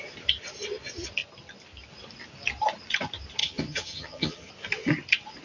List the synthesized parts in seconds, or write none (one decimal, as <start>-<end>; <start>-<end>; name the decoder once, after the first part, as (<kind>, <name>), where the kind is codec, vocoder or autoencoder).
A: 3.4-4.5 (vocoder, HiFi-GAN)

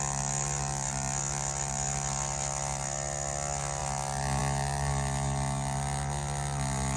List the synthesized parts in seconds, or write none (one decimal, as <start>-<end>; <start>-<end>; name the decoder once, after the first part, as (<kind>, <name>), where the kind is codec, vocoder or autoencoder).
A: none

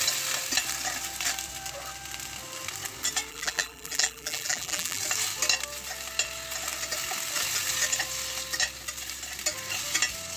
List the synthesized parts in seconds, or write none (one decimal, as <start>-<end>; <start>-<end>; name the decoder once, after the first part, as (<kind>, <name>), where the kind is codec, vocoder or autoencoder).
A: 3.3-5.0 (vocoder, BigVGAN v2)

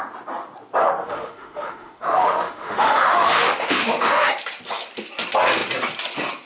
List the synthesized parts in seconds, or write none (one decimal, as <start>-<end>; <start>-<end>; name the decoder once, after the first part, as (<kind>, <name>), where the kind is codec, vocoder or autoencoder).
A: 0.8-4.3 (autoencoder, DAC-VAE)

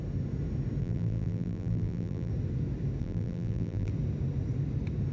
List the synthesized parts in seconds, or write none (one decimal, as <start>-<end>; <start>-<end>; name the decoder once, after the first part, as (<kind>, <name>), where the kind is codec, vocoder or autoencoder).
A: 0.8-2.3 (vocoder, BigVGAN v2); 3.0-3.9